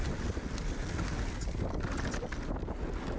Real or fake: real